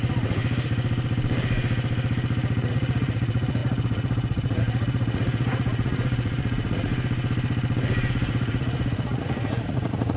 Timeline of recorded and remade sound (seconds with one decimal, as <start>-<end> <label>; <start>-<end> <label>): 0.0-0.4 remade; 0.4-2.7 recorded; 2.7-6.9 remade; 6.9-8.1 recorded; 8.1-10.2 remade